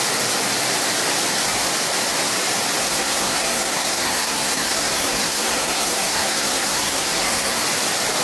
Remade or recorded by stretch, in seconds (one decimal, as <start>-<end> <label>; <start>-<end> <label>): 0.0-2.8 recorded; 2.8-7.6 remade; 7.6-8.2 recorded